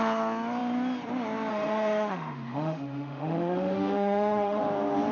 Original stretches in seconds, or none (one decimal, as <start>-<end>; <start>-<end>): 0.0-1.5; 4.6-5.1